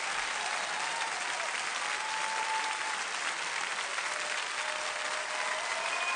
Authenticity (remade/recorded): recorded